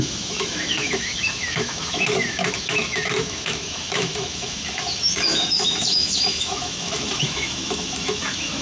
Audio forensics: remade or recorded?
remade